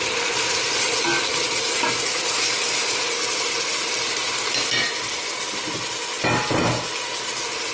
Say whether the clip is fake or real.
real